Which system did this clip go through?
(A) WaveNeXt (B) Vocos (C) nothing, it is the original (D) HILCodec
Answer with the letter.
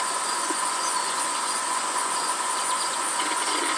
B